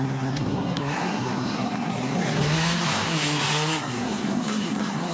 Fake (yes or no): yes